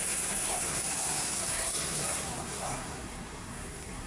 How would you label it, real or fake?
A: fake